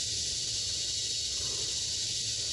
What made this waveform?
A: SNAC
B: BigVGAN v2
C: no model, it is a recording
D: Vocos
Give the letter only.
C